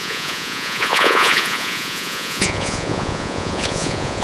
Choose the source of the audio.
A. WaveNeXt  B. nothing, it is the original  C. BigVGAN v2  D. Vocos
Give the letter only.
D